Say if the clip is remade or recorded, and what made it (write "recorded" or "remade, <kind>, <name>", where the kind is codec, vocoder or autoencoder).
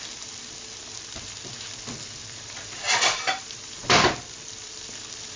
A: remade, vocoder, BigVGAN v2